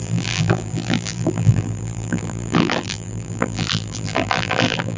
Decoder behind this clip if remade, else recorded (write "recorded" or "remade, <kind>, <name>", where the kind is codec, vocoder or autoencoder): remade, vocoder, BigVGAN v2